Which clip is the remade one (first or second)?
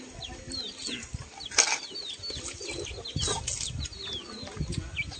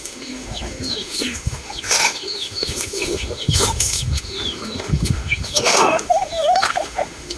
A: second